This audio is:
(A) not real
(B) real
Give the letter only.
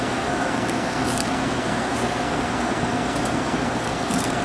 A